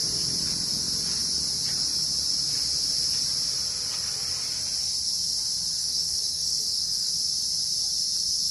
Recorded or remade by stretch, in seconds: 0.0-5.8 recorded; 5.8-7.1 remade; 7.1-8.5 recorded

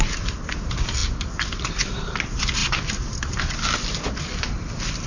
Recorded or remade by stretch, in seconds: 0.0-5.1 recorded

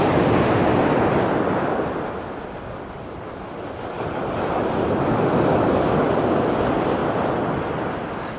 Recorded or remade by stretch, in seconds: 0.0-8.4 recorded